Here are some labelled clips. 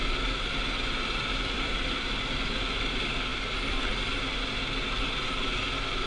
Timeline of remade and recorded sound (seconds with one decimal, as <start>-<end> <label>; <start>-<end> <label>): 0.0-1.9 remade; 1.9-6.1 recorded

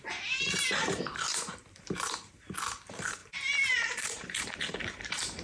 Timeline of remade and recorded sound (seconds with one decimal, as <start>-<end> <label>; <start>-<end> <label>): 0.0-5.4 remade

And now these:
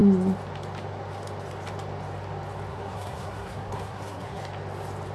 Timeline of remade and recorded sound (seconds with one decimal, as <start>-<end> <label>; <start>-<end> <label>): 0.0-2.7 recorded; 2.7-4.4 remade; 4.4-5.1 recorded

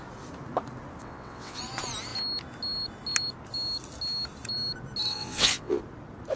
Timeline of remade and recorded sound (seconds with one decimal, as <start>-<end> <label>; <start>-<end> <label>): 0.0-1.0 recorded; 1.0-1.6 remade; 1.6-5.1 recorded; 5.1-5.8 remade; 5.8-6.4 recorded